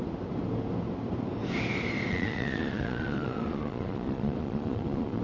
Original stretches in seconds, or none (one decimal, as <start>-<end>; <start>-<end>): 0.0-2.1